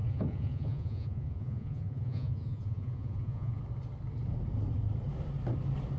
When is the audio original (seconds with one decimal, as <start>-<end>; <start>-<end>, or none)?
3.6-6.0